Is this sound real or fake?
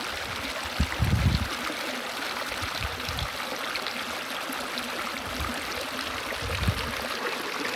real